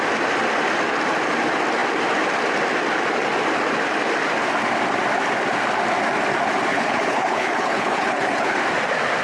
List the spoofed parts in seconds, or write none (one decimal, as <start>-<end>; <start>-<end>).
6.7-8.6